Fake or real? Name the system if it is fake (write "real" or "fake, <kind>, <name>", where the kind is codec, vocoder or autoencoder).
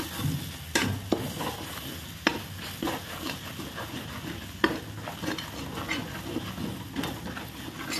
real